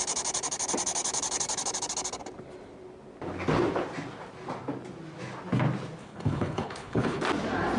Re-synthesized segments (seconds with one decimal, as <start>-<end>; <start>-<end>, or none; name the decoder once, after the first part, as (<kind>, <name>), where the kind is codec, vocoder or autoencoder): 6.0-7.2 (codec, HILCodec)